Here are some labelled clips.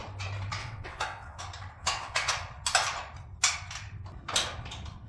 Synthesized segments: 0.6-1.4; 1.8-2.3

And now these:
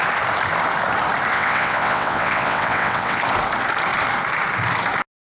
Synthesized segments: 1.3-3.2

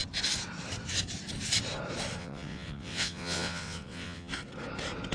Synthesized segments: 2.2-4.3

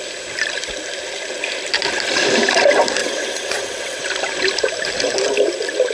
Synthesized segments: 3.0-4.0

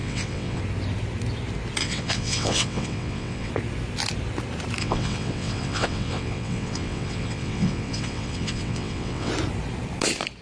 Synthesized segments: 0.0-0.6; 1.8-3.5; 4.8-9.3

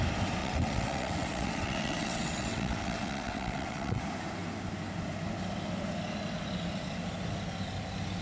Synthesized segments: 0.4-4.0